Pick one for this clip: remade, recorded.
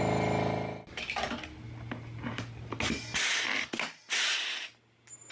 recorded